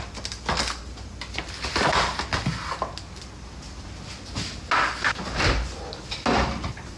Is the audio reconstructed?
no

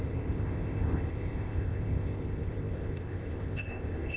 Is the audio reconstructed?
yes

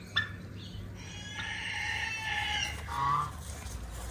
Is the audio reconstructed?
no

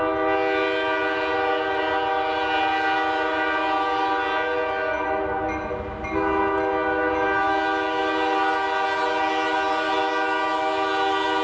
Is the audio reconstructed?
no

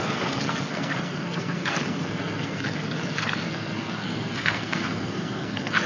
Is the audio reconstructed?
yes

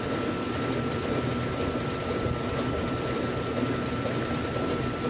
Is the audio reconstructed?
no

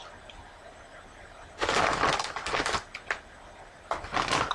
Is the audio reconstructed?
no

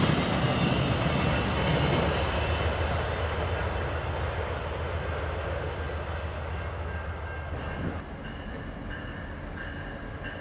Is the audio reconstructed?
no